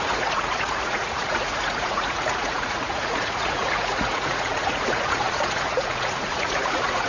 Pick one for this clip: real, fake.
fake